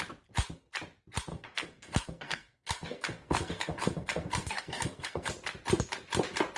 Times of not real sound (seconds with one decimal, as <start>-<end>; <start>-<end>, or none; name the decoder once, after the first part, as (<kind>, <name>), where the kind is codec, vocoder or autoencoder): 1.3-5.3 (codec, SNAC)